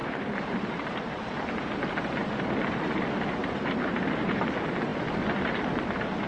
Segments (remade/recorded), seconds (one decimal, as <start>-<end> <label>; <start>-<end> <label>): 0.0-1.8 remade; 1.8-2.2 recorded; 2.2-3.0 remade; 3.0-3.4 recorded; 3.4-4.4 remade; 4.4-6.3 recorded